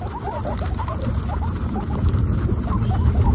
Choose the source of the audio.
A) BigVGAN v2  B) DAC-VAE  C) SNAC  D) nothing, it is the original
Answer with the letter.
D